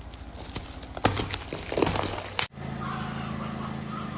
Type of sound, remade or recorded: recorded